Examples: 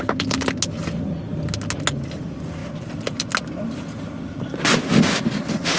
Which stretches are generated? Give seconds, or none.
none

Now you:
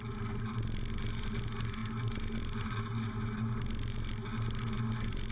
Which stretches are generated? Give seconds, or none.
none

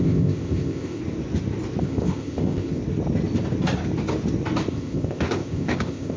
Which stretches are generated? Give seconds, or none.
0.0-1.0 (codec, ZipCodec); 1.8-2.8; 4.7-6.2

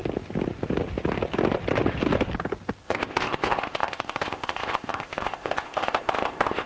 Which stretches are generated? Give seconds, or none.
2.8-6.7 (codec, ZipCodec)